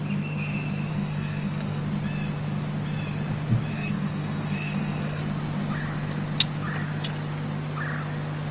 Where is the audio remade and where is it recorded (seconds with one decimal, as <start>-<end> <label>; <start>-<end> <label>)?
0.0-0.9 recorded; 0.9-1.8 remade; 1.8-3.7 recorded; 3.7-5.2 remade; 5.2-8.5 recorded